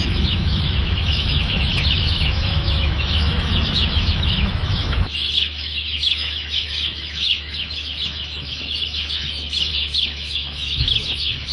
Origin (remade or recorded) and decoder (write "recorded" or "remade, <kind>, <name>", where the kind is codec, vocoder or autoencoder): remade, autoencoder, DAC-VAE